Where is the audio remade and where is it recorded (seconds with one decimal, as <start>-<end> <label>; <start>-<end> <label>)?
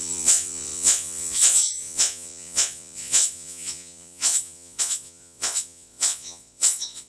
0.0-7.1 remade